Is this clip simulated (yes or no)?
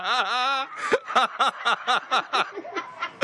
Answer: no